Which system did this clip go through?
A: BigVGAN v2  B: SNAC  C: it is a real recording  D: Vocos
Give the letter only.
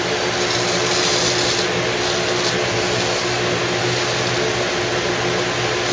C